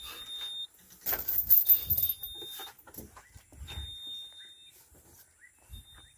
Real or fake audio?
real